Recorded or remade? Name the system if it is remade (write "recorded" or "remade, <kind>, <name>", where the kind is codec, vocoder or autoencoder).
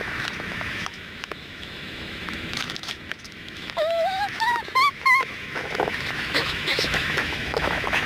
remade, autoencoder, DAC-VAE